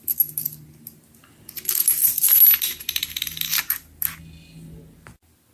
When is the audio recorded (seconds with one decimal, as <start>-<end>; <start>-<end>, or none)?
0.0-5.5